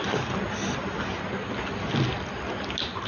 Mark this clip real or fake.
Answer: real